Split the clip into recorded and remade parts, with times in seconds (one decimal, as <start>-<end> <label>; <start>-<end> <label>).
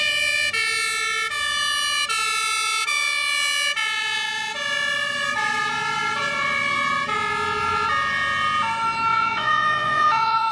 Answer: 0.0-9.1 recorded; 9.1-10.5 remade